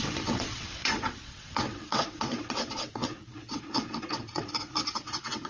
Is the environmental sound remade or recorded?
remade